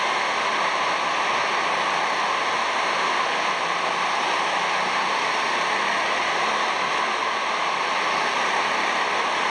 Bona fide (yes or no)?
yes